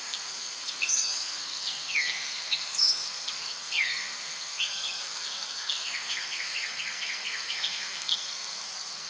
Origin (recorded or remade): remade